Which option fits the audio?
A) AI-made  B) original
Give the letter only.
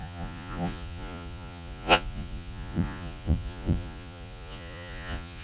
A